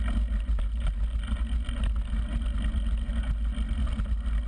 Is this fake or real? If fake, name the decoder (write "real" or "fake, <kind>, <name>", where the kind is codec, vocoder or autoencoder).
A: real